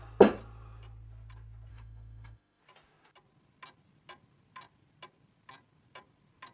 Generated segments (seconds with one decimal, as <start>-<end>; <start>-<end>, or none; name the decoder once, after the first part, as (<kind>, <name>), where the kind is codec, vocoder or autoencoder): 1.7-2.6 (autoencoder, DAC-VAE)